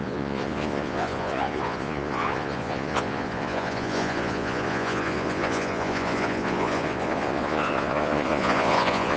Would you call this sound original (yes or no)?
no